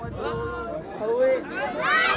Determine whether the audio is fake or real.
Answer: real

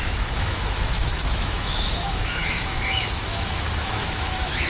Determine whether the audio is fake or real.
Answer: fake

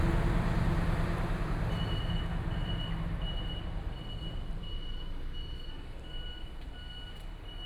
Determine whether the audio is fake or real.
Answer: real